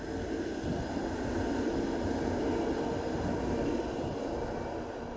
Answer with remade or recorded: recorded